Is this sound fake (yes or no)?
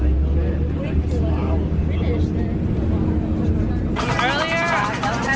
no